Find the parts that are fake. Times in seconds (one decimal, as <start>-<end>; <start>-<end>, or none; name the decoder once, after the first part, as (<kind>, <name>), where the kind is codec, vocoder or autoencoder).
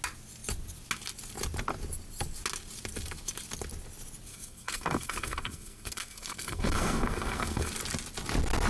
4.3-7.7 (codec, SNAC)